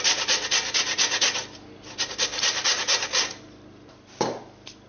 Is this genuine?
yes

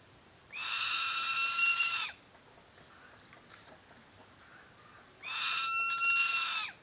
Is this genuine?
yes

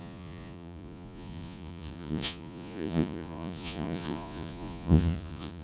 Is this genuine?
no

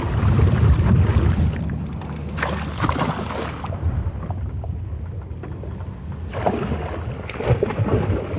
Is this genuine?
yes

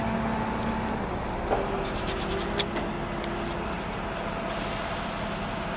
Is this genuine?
yes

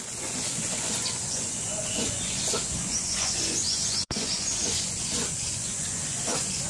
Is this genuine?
no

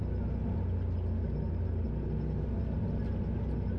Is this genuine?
yes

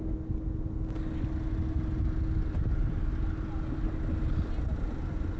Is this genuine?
yes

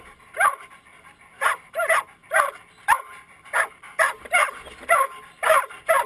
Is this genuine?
yes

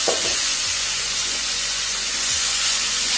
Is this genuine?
no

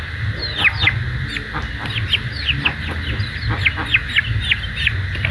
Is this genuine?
yes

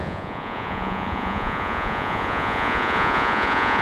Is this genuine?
no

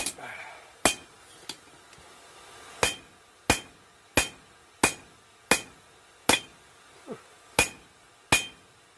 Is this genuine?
yes